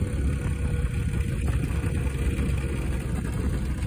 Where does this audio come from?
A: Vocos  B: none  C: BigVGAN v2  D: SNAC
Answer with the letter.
B